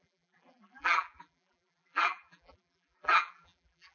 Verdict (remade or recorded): remade